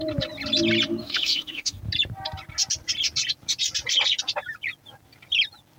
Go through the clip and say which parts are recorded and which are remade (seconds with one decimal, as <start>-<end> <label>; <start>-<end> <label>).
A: 0.0-1.0 recorded; 1.0-1.8 remade; 1.8-5.8 recorded